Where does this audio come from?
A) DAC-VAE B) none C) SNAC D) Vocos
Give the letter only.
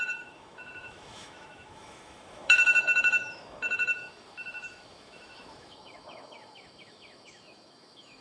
A